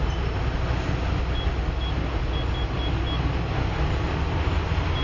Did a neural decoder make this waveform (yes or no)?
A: no